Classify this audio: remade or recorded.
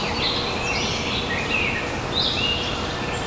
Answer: recorded